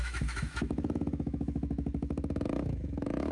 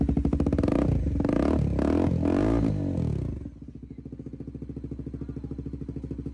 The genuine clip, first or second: second